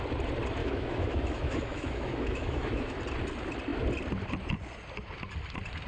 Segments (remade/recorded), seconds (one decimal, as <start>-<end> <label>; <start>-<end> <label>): 0.0-0.6 recorded; 0.6-3.0 remade; 3.0-5.9 recorded